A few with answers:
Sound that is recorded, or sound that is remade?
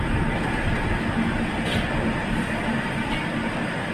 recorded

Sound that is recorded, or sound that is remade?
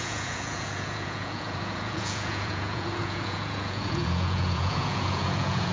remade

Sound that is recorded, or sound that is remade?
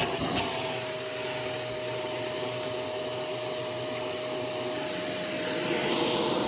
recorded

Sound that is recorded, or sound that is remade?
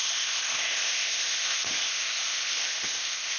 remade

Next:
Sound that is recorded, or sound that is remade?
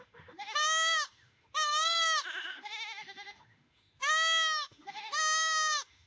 remade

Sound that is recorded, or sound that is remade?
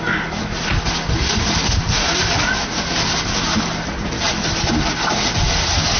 recorded